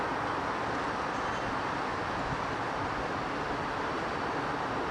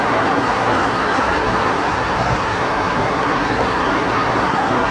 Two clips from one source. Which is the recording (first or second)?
first